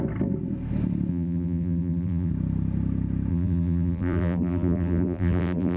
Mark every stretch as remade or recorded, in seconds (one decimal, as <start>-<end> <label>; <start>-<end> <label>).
0.0-1.1 recorded; 1.1-2.3 remade; 2.3-3.3 recorded; 3.3-5.8 remade